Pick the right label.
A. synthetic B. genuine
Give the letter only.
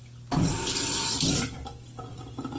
B